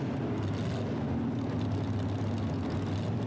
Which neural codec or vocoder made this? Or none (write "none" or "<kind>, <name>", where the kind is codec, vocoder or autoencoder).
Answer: none